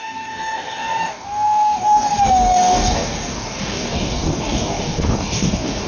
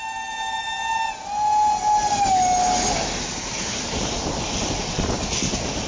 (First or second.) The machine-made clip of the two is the first